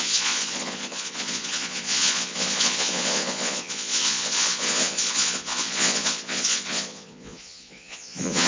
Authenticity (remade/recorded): remade